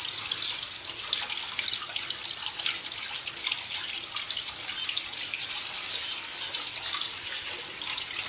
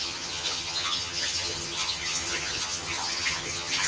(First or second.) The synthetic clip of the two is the second